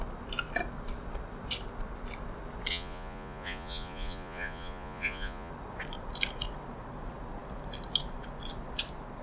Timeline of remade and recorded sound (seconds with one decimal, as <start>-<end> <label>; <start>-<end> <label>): 0.0-2.7 recorded; 2.7-5.5 remade; 5.5-9.2 recorded